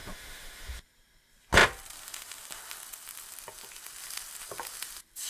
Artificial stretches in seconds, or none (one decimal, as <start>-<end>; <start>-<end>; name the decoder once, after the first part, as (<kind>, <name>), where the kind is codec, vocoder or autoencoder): 0.0-0.8 (autoencoder, DAC-VAE)